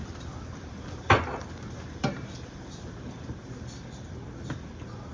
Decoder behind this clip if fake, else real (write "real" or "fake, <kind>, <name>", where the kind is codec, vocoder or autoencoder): real